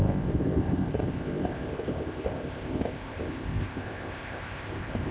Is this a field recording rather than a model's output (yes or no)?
no